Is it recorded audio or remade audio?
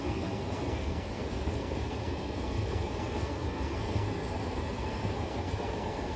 remade